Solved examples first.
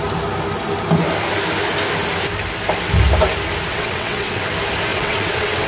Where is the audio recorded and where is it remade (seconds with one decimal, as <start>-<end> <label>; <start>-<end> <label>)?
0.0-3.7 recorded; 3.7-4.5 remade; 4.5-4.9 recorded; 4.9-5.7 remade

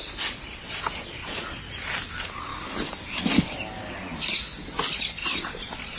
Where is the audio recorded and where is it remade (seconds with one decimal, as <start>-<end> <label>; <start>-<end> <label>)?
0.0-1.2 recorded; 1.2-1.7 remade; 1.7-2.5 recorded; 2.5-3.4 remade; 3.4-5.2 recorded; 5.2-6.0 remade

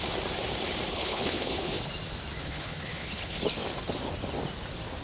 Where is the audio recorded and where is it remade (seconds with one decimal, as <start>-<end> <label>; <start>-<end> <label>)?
0.0-0.9 recorded; 0.9-1.9 remade; 1.9-2.4 recorded; 2.4-3.4 remade; 3.4-5.0 recorded

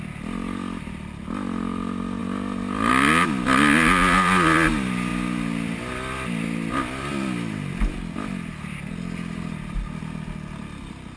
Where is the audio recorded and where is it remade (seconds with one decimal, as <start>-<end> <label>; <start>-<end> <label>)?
0.0-11.2 recorded

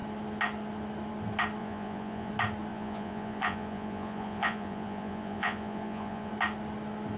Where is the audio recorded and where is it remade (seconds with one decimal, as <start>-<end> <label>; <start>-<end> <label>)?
0.0-1.6 recorded; 1.6-2.3 remade; 2.3-2.7 recorded; 2.7-6.3 remade; 6.3-7.2 recorded

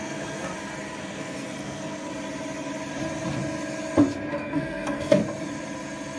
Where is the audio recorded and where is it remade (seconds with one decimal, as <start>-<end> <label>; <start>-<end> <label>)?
0.0-0.5 remade; 0.5-1.0 recorded; 1.0-2.1 remade; 2.1-4.3 recorded; 4.3-5.2 remade; 5.2-6.2 recorded